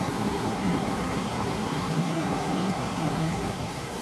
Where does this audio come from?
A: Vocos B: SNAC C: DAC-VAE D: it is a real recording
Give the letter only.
B